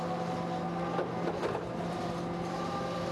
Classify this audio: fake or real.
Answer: real